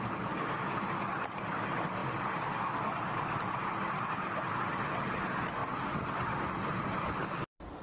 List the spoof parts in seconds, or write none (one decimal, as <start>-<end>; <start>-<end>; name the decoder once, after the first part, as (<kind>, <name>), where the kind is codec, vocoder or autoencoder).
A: 7.2-7.8 (vocoder, BigVGAN v2)